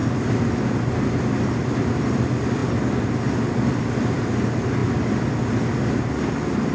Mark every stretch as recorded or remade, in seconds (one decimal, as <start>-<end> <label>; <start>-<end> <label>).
0.0-6.7 recorded